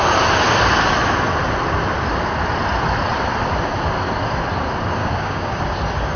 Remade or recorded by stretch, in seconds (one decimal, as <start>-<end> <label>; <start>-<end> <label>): 0.0-5.0 recorded; 5.0-5.6 remade; 5.6-6.2 recorded